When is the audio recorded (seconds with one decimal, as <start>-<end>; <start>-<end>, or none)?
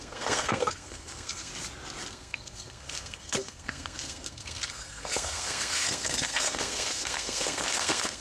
1.5-2.1